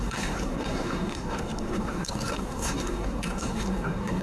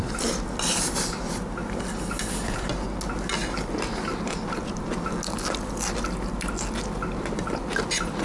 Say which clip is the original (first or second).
second